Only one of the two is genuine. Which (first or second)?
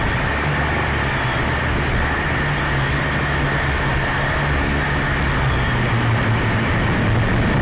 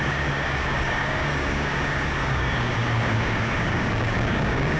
first